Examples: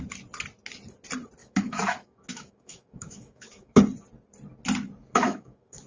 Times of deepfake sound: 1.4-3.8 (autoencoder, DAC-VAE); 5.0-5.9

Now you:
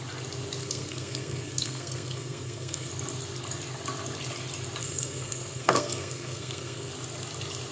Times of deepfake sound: 0.6-2.9 (codec, SNAC); 4.8-6.9

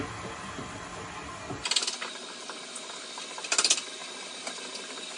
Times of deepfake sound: none

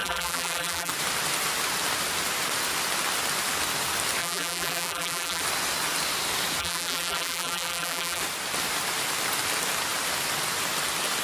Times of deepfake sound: 0.0-0.9 (vocoder, BigVGAN v2); 4.2-5.4; 6.6-8.2

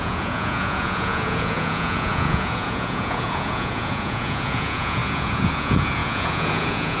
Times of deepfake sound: 0.0-7.0 (vocoder, Vocos)

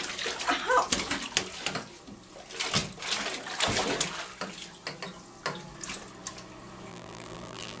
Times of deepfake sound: 6.9-7.8 (vocoder, BigVGAN v2)

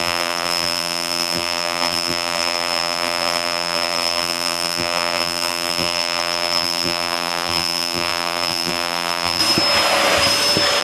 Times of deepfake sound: 0.0-9.4 (vocoder, BigVGAN v2)